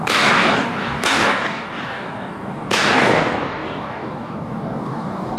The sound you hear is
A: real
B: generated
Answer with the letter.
B